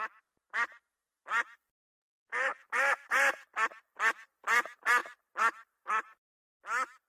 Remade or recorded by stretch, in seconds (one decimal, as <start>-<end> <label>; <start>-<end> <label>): 0.0-5.0 recorded; 5.0-6.6 remade; 6.6-7.1 recorded